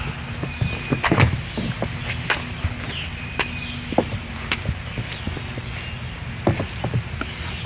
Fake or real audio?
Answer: real